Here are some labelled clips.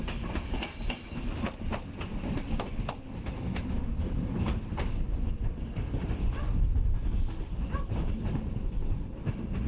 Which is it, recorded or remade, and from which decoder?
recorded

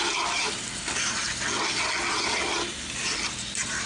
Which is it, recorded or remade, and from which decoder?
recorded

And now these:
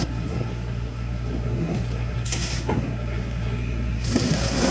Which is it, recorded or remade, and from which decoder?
remade, codec, SNAC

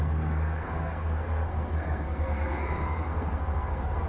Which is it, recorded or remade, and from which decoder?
remade, codec, SNAC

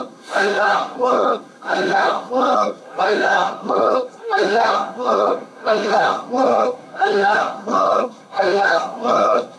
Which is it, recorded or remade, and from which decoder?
remade, codec, SNAC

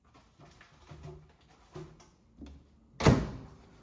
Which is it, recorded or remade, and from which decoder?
recorded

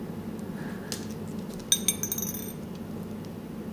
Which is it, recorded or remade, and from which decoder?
recorded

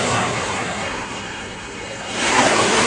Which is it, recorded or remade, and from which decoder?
remade, codec, SNAC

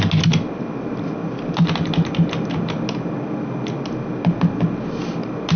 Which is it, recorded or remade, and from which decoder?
recorded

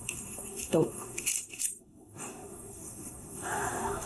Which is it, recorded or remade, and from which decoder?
remade, codec, SNAC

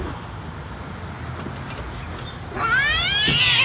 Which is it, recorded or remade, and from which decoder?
recorded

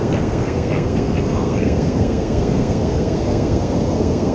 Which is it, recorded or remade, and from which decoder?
remade, codec, SNAC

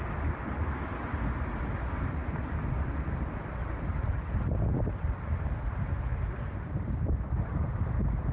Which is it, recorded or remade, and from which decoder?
recorded